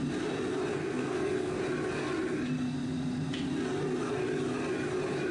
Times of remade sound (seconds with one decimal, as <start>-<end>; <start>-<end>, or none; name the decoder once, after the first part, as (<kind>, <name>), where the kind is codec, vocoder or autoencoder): 0.7-1.6 (codec, SNAC)